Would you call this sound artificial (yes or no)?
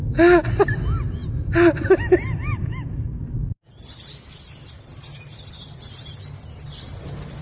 no